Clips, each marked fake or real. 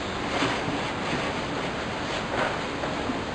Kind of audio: real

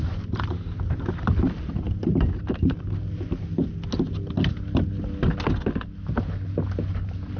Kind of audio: real